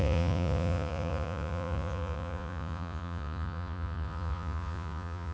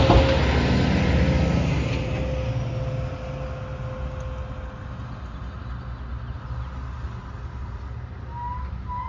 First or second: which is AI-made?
first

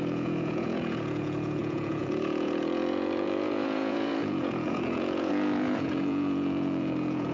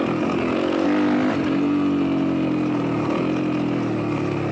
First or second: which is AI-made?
first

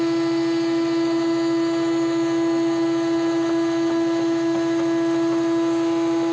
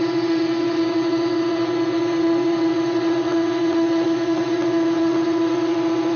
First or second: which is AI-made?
second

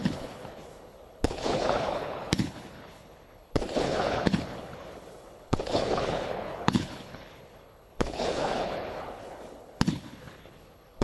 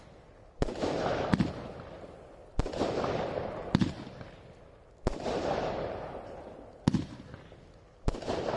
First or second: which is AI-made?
first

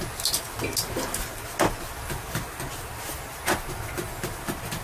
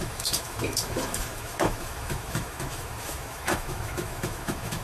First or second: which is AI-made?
second